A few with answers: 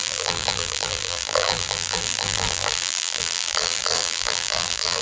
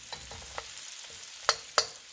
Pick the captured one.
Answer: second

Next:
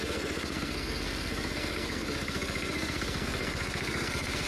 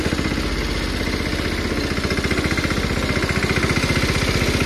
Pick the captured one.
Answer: second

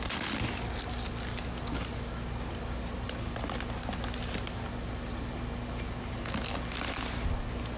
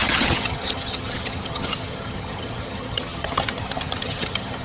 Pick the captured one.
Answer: first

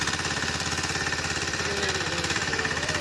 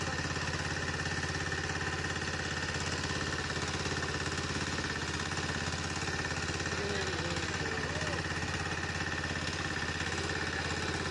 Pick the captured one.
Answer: second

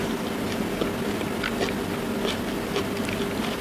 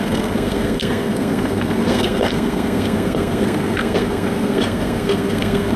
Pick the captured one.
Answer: first